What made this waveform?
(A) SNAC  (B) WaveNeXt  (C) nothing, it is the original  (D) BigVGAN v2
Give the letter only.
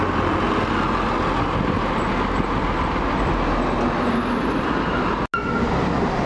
C